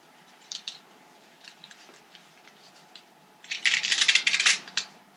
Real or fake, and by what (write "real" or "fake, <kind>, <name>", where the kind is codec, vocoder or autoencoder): fake, vocoder, BigVGAN v2